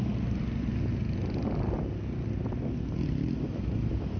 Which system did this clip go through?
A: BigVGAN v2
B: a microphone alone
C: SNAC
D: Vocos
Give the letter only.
B